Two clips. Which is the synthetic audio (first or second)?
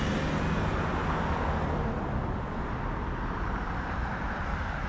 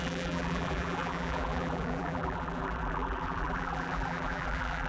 second